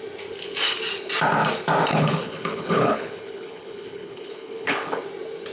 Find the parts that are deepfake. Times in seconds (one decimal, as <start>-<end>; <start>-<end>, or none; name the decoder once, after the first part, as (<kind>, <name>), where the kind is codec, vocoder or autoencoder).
1.9-5.0 (codec, HILCodec)

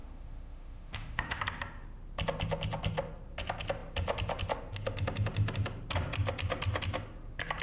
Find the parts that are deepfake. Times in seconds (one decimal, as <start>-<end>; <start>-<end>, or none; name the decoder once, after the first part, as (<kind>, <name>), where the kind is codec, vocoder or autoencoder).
0.0-1.4 (autoencoder, DAC-VAE)

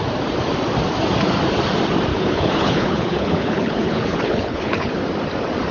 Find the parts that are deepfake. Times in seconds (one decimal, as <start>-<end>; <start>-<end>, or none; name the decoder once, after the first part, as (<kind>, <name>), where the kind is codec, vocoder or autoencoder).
2.1-5.0 (codec, HILCodec)